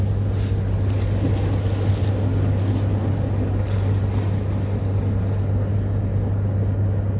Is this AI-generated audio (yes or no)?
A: no